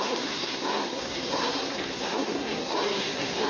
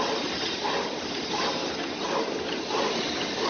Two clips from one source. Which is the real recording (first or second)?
second